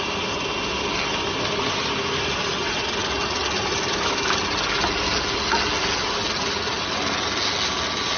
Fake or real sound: real